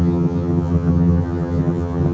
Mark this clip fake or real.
fake